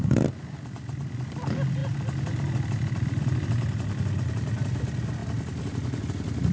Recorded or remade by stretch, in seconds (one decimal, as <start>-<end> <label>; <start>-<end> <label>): 0.0-6.5 recorded